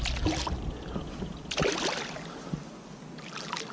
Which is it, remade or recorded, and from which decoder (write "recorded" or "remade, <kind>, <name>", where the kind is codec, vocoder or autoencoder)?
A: recorded